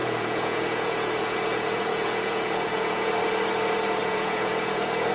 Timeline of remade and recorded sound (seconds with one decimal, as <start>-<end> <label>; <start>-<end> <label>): 0.0-3.1 remade; 3.1-4.0 recorded; 4.0-5.1 remade